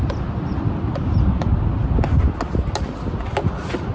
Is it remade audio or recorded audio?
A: recorded